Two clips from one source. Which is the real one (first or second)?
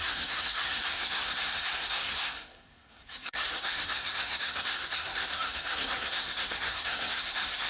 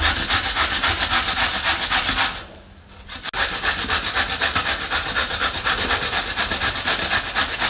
second